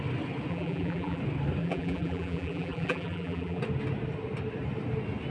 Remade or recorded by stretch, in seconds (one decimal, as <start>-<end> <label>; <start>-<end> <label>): 0.0-0.5 recorded; 0.5-1.2 remade; 1.2-1.6 recorded; 1.6-3.6 remade; 3.6-5.3 recorded